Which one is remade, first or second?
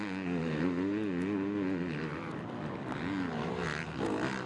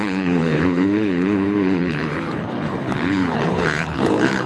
second